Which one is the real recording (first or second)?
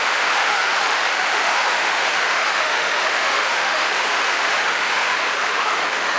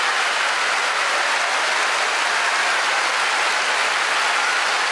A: second